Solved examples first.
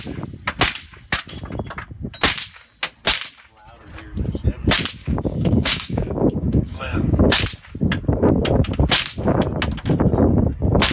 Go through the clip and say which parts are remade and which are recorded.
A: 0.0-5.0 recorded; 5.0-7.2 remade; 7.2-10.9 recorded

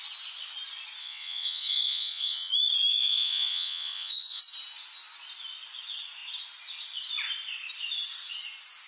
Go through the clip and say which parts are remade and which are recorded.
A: 0.0-1.0 recorded; 1.0-2.5 remade; 2.5-2.9 recorded; 2.9-4.4 remade; 4.4-8.9 recorded

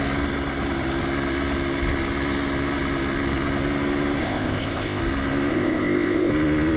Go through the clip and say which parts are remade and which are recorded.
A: 0.0-4.2 recorded; 4.2-5.0 remade; 5.0-5.5 recorded; 5.5-6.3 remade; 6.3-6.8 recorded

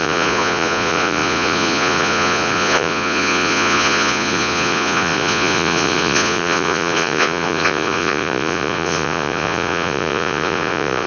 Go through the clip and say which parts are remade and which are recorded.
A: 0.0-11.1 remade